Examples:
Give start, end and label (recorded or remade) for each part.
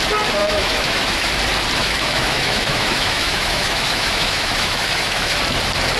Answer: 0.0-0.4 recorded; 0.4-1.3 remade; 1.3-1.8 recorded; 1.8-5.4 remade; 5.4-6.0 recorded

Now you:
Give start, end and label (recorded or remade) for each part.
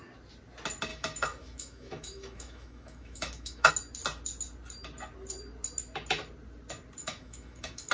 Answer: 0.0-0.9 recorded; 0.9-3.7 remade; 3.7-7.0 recorded; 7.0-7.9 remade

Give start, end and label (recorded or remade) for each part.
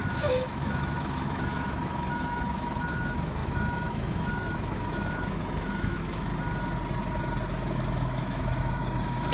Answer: 0.0-6.3 remade; 6.3-7.5 recorded; 7.5-9.3 remade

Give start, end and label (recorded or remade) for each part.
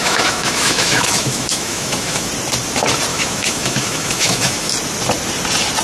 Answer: 0.0-2.3 remade; 2.3-3.1 recorded; 3.1-4.7 remade; 4.7-5.8 recorded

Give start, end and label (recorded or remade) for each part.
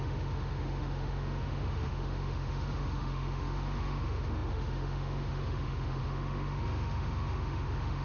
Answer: 0.0-8.0 remade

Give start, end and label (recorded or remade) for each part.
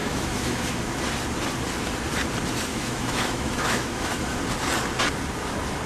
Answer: 0.0-1.0 remade; 1.0-2.7 recorded; 2.7-4.4 remade; 4.4-5.9 recorded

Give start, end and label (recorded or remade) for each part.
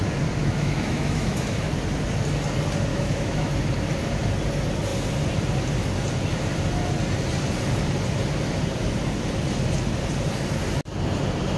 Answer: 0.0-0.4 recorded; 0.4-1.7 remade; 1.7-2.9 recorded; 2.9-3.5 remade; 3.5-11.6 recorded